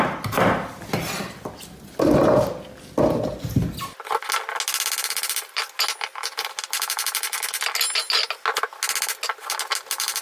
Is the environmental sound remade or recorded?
recorded